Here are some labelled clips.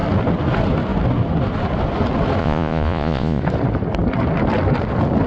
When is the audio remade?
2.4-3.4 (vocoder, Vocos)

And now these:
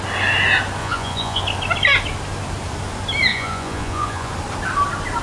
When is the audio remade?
0.8-1.4 (vocoder, Vocos); 3.3-4.3

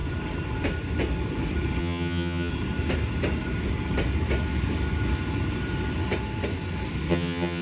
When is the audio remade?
1.8-2.5 (vocoder, HiFi-GAN); 7.1-7.6

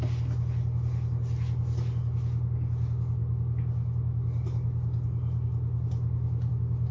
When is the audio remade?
none

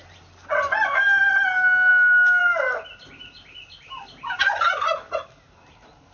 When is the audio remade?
none

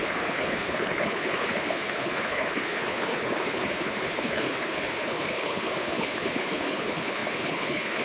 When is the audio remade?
0.0-8.0 (codec, HILCodec)